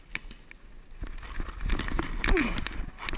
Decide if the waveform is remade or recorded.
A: recorded